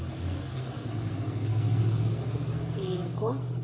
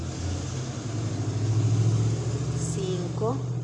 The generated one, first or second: first